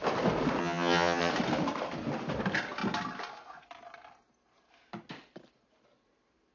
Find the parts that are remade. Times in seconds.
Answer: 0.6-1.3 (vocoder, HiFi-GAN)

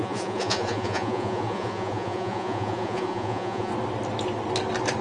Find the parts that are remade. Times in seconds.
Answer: 0.0-3.7 (vocoder, Vocos)